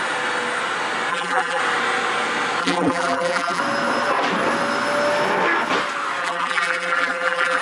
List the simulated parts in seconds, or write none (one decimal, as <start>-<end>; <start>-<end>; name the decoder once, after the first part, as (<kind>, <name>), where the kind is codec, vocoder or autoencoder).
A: 1.1-1.6 (vocoder, BigVGAN v2); 2.6-3.6; 6.2-7.6